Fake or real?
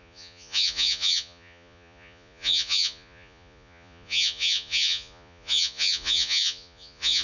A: fake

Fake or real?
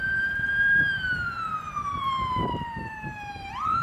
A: fake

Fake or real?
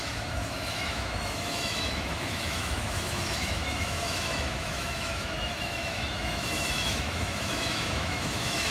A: fake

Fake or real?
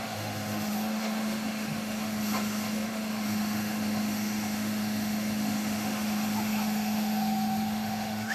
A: fake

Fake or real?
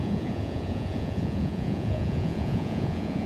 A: fake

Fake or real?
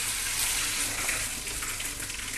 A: real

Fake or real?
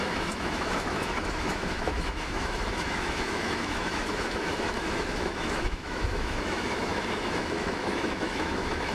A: fake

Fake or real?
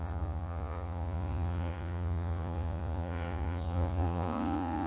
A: fake